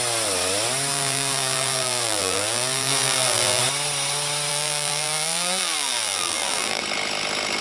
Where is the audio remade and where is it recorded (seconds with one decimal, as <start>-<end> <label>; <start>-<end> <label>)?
0.0-0.9 recorded; 0.9-3.6 remade; 3.6-4.5 recorded; 4.5-6.8 remade; 6.8-7.6 recorded